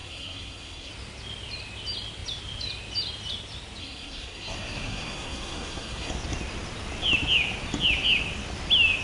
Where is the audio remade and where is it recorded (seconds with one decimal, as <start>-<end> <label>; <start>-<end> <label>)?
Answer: 0.0-0.9 remade; 0.9-3.8 recorded; 3.8-6.1 remade; 6.1-9.0 recorded